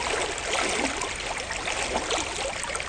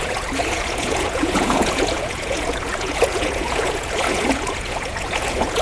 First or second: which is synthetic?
second